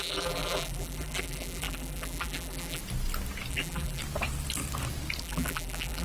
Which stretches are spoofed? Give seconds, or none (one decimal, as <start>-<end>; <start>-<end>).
0.0-2.8; 3.5-4.0; 5.2-6.0

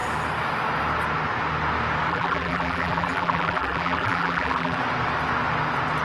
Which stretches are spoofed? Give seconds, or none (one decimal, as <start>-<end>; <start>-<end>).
2.1-4.8

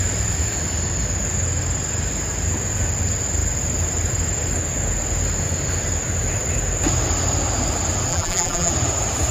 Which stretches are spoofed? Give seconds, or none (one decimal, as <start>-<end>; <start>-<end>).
8.1-8.7

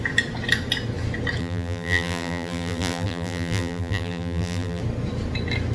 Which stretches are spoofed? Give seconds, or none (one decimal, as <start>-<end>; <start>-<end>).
1.4-4.8

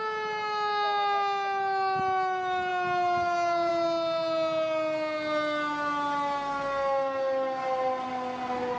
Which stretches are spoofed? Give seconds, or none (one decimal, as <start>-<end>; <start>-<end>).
none

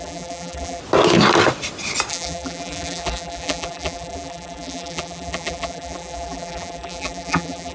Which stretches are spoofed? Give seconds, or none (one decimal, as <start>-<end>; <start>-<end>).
0.0-0.8; 2.1-7.7

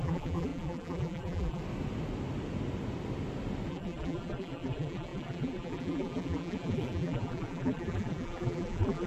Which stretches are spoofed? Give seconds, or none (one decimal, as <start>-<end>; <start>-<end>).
0.0-1.6; 3.7-9.1